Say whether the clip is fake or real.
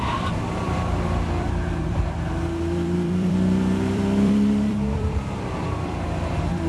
fake